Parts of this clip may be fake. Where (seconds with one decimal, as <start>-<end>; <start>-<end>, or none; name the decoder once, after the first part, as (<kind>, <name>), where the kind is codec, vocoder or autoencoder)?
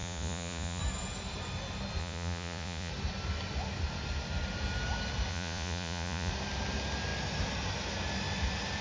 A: 0.0-0.8 (vocoder, Vocos); 2.0-2.9; 5.3-6.3